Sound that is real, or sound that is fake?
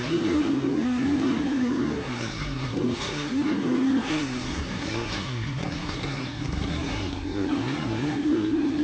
fake